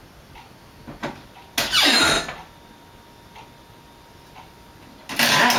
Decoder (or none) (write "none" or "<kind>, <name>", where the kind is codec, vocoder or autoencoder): none